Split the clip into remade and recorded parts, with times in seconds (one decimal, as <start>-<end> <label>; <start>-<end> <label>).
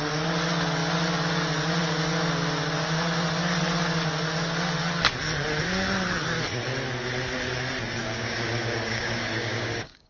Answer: 0.0-8.0 recorded; 8.0-10.1 remade